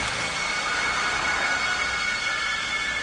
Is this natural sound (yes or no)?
yes